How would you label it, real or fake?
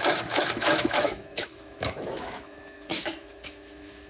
fake